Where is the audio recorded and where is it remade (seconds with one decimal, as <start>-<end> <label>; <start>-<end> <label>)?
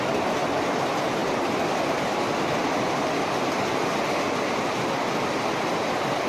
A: 0.0-6.3 recorded